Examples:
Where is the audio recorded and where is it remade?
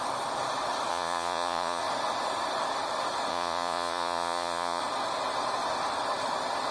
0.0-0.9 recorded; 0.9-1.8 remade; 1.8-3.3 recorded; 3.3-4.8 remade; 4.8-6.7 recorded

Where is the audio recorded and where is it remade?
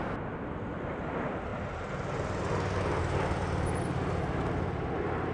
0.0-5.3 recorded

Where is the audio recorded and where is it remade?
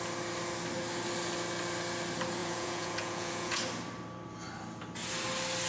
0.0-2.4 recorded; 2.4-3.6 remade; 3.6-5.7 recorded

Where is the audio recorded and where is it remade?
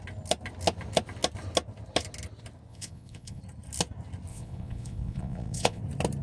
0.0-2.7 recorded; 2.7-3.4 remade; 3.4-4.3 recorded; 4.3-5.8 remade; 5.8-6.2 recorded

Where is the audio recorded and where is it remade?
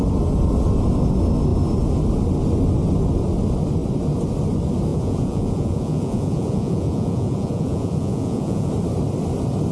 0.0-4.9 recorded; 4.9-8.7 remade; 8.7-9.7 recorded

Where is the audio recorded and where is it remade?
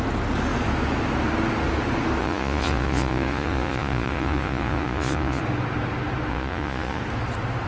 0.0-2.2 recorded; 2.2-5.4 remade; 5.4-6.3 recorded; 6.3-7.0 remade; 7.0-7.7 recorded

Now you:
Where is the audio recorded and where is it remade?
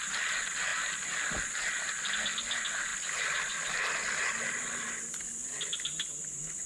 0.0-6.7 recorded